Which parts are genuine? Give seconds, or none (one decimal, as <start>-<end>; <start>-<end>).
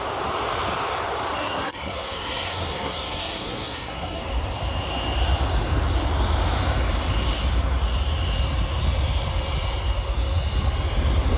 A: 0.0-1.3; 4.2-11.4